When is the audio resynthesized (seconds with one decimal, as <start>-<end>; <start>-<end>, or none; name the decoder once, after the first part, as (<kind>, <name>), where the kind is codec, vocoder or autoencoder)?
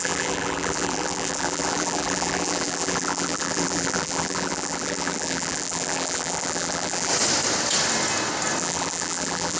0.0-7.1 (vocoder, BigVGAN v2); 8.6-9.6